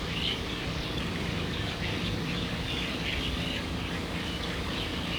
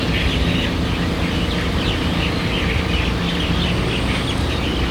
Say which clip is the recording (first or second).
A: second